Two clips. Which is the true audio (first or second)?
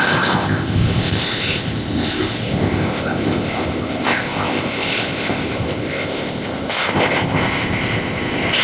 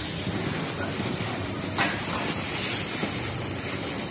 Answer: second